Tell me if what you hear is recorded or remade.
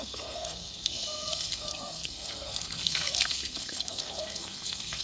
remade